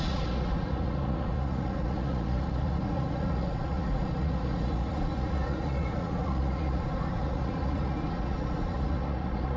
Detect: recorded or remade remade